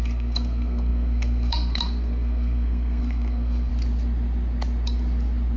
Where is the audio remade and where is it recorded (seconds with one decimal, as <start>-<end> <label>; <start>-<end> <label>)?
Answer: 0.0-3.7 remade; 3.7-5.6 recorded